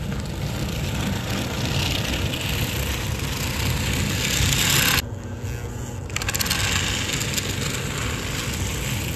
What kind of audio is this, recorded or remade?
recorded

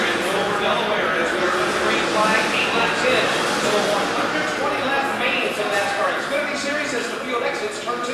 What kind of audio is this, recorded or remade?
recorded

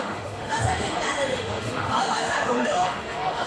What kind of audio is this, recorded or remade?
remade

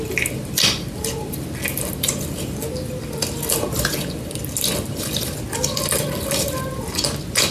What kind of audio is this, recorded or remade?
recorded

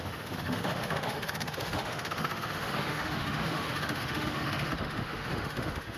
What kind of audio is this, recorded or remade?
remade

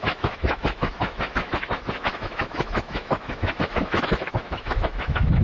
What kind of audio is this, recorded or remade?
remade